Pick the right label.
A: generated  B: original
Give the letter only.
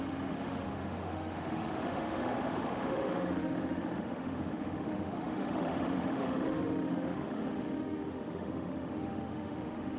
A